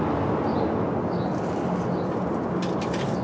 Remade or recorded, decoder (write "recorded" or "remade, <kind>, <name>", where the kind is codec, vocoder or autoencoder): recorded